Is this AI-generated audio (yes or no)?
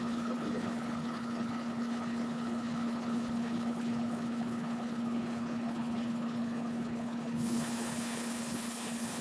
yes